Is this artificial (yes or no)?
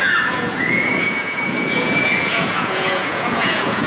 yes